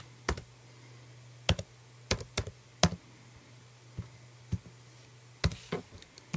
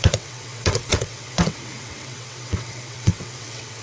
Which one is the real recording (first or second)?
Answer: first